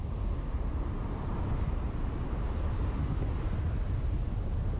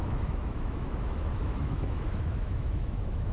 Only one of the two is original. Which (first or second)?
first